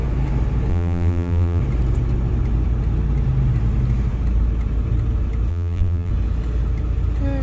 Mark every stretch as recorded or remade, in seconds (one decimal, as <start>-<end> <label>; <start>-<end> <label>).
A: 0.0-0.7 recorded; 0.7-1.6 remade; 1.6-5.5 recorded; 5.5-6.1 remade; 6.1-7.4 recorded

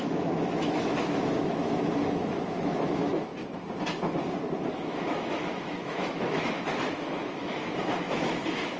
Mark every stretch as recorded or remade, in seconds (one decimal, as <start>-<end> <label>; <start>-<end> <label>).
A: 0.0-3.3 remade; 3.3-4.7 recorded; 4.7-8.8 remade

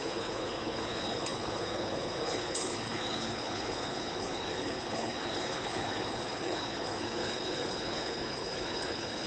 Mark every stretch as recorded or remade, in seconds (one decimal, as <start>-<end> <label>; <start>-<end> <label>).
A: 0.0-9.3 remade

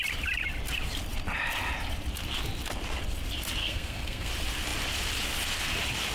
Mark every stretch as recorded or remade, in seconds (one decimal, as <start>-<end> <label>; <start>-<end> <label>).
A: 0.0-3.6 recorded; 3.6-4.3 remade; 4.3-6.1 recorded

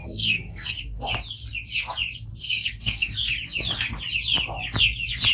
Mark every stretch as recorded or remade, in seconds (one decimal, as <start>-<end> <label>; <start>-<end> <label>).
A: 0.0-0.8 remade; 0.8-2.3 recorded; 2.3-3.3 remade; 3.3-5.3 recorded